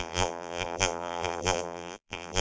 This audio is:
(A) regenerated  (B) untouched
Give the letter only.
A